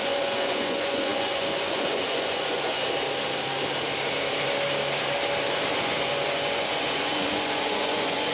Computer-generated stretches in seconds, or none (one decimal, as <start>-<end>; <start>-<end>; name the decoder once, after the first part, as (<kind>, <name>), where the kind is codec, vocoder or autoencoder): 0.0-2.8 (vocoder, Vocos); 5.8-8.3